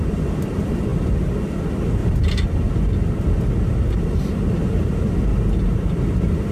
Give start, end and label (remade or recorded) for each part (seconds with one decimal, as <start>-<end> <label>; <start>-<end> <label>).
0.0-6.5 recorded

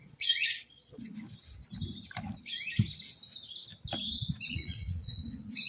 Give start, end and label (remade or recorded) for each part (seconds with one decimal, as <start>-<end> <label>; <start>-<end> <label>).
0.0-1.1 remade; 1.1-4.5 recorded; 4.5-5.7 remade

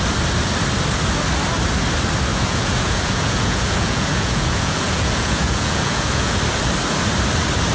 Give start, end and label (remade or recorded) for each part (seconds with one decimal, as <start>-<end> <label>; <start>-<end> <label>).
0.0-2.3 recorded; 2.3-6.4 remade; 6.4-7.7 recorded

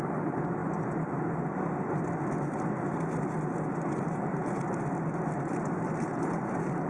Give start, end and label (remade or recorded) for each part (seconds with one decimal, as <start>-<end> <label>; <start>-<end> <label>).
0.0-6.9 recorded

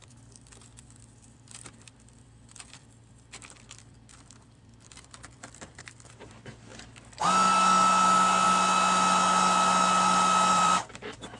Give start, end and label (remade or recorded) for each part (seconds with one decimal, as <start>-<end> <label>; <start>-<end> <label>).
0.0-6.7 remade; 6.7-10.5 recorded; 10.5-11.4 remade

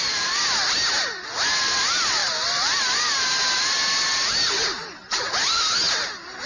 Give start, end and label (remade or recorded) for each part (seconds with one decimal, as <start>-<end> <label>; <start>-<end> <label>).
0.0-6.5 recorded

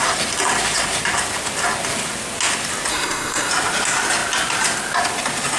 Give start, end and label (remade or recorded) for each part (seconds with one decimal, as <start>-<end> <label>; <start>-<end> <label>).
0.0-2.9 recorded; 2.9-3.5 remade; 3.5-5.6 recorded

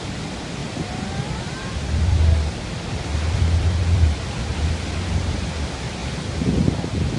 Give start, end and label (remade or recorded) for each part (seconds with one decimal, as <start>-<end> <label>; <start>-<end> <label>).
0.0-0.6 recorded; 0.6-4.7 remade; 4.7-7.2 recorded